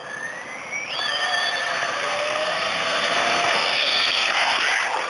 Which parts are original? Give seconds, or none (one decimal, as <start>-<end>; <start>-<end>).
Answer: 0.0-1.7; 4.6-5.1

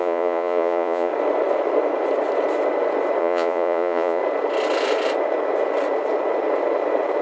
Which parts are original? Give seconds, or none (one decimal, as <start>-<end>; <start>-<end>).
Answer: 1.1-3.2; 4.2-7.2

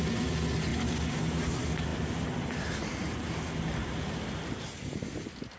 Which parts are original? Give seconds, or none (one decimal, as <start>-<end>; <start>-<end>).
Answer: 0.0-5.6

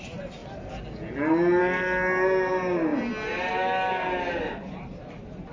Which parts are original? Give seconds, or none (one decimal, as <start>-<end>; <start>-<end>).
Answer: 0.0-5.5

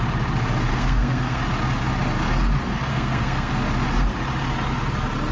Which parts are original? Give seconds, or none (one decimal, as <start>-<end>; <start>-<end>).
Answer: 0.0-0.7; 1.4-2.9; 3.5-5.3

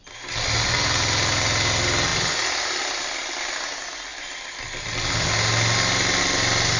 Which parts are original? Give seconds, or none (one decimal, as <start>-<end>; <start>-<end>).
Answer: 0.0-6.8